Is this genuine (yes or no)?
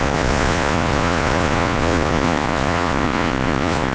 no